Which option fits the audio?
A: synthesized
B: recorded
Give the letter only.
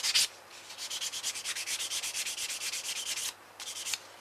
B